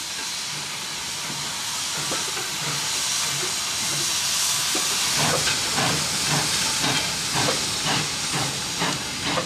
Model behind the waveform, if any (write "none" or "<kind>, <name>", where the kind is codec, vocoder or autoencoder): none